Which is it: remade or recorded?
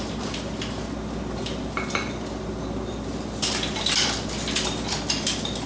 recorded